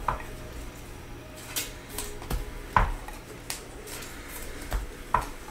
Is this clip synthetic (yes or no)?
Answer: no